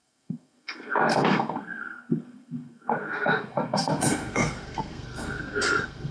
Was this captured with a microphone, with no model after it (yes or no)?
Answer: no